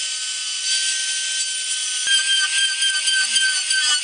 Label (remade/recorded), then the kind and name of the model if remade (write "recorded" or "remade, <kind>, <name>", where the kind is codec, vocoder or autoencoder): recorded